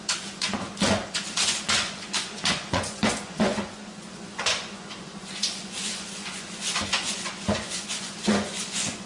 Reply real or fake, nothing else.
fake